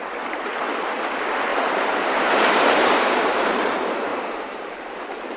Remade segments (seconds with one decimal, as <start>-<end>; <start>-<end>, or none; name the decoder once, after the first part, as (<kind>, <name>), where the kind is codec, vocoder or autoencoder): 1.5-3.6 (vocoder, BigVGAN v2); 4.1-4.8